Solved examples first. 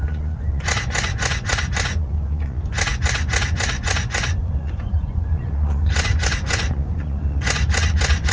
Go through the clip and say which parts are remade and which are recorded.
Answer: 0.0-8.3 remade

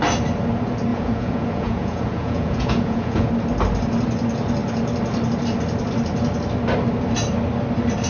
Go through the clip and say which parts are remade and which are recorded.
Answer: 0.0-0.9 recorded; 0.9-3.3 remade; 3.3-8.1 recorded

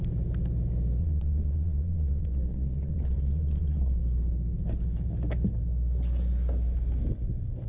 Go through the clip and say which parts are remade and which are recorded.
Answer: 0.0-1.0 recorded; 1.0-4.0 remade; 4.0-7.7 recorded

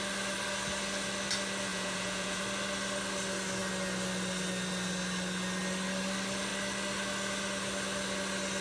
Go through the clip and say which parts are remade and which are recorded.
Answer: 0.0-1.7 recorded; 1.7-2.4 remade; 2.4-8.6 recorded

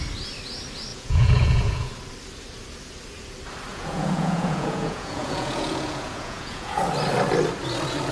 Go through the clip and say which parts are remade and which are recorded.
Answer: 0.0-0.9 recorded; 0.9-1.9 remade; 1.9-3.7 recorded; 3.7-6.8 remade; 6.8-8.1 recorded